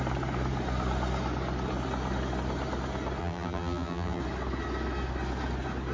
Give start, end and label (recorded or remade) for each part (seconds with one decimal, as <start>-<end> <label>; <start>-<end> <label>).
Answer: 0.0-3.2 recorded; 3.2-4.2 remade; 4.2-5.9 recorded